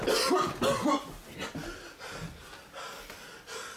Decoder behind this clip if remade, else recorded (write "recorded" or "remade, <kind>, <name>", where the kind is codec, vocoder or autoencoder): recorded